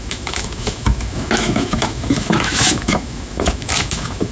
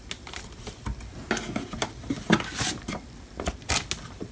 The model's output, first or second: first